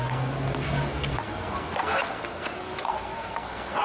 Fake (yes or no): yes